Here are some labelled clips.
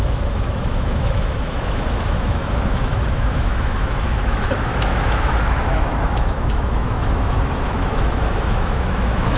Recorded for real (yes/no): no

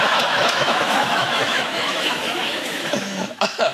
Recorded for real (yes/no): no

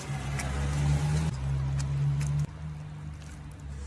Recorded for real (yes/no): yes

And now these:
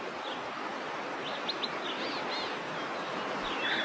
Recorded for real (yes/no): yes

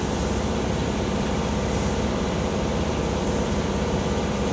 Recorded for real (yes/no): no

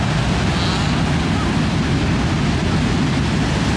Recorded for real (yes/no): yes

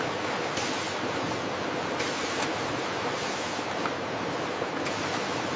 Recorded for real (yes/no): yes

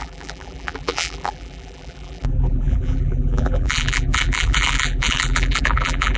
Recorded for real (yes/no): no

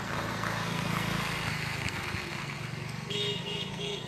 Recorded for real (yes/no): no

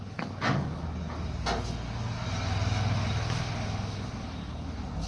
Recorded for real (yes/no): yes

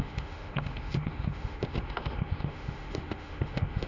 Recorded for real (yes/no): no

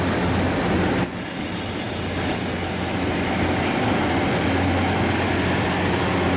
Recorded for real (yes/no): yes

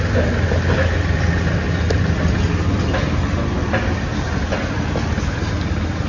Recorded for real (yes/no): yes